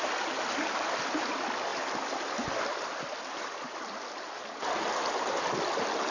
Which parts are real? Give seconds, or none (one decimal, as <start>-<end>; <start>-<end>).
0.0-6.1

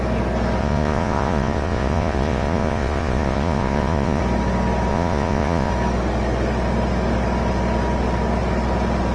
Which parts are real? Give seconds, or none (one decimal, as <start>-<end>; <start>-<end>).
0.0-0.6; 4.2-4.9; 5.7-9.1

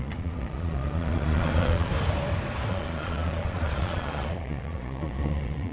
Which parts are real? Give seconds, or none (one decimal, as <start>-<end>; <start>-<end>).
1.9-2.7

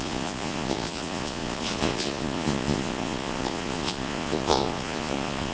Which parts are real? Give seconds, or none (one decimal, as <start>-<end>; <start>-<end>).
none

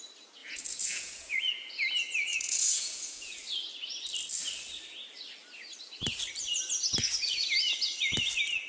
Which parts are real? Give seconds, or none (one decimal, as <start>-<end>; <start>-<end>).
0.0-0.4; 1.7-2.3; 3.5-8.7

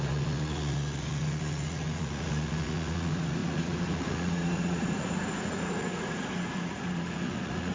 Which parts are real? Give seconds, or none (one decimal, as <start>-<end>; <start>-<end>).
none

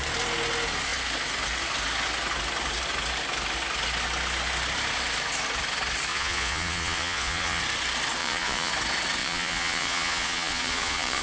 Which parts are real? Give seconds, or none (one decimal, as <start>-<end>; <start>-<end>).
0.0-6.1; 7.6-8.2; 8.7-9.2

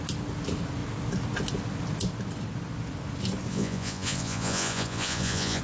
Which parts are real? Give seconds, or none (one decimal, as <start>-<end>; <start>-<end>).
0.0-3.5